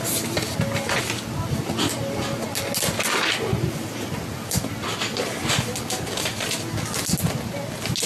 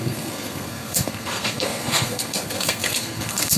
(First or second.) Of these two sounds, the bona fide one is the first